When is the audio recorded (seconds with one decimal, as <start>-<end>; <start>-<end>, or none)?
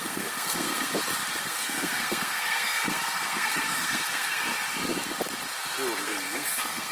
0.9-1.4; 4.5-6.0